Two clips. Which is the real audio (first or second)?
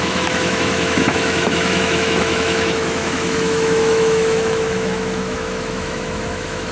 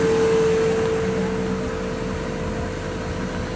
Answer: second